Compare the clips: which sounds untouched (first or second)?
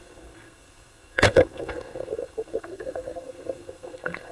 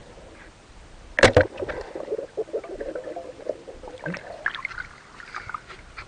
second